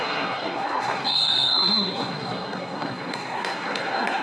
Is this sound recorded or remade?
remade